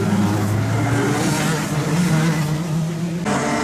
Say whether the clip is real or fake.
real